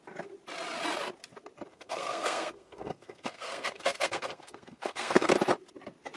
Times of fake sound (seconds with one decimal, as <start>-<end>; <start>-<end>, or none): 1.7-5.3